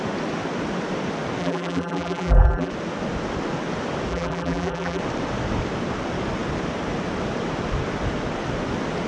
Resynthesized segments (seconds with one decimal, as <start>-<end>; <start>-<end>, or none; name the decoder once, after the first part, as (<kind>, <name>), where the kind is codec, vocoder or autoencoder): 1.4-2.7 (vocoder, BigVGAN v2); 4.1-5.0